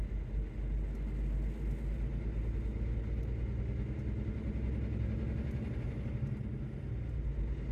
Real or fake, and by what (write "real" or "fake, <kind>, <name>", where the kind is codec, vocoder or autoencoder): real